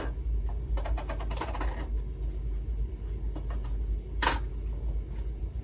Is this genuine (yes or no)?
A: yes